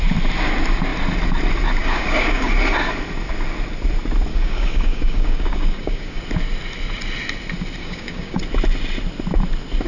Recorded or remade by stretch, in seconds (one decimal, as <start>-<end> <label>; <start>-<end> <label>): 0.0-1.8 recorded; 1.8-2.5 remade; 2.5-4.3 recorded; 4.3-6.2 remade; 6.2-7.8 recorded; 7.8-8.4 remade; 8.4-9.9 recorded